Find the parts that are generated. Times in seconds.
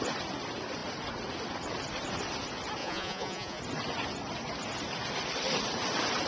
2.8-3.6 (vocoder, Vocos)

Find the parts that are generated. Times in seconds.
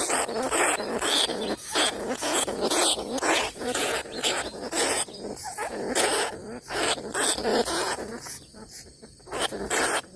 1.3-6.3 (vocoder, Vocos); 7.5-9.1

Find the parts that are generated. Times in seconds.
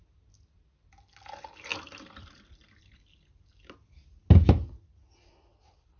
none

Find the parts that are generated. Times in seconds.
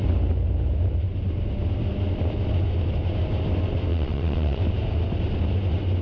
3.9-4.6 (vocoder, Vocos)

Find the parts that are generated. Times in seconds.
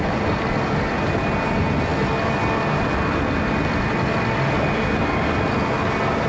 none